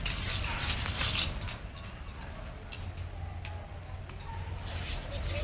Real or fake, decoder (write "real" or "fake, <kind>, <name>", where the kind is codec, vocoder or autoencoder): real